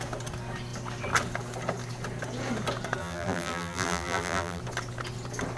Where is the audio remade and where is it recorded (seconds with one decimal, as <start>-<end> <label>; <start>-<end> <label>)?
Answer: 0.0-3.0 recorded; 3.0-4.6 remade; 4.6-5.6 recorded